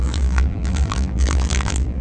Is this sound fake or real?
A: fake